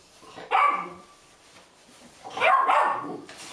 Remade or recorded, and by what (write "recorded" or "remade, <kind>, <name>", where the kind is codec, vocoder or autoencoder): recorded